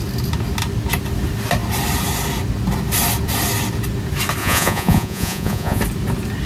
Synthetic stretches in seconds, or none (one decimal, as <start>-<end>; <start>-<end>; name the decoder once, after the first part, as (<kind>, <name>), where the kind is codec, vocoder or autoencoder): 4.4-5.8 (vocoder, Vocos)